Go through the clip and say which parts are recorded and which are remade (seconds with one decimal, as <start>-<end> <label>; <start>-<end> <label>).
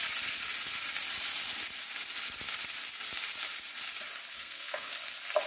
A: 0.0-4.3 recorded; 4.3-4.9 remade; 4.9-5.5 recorded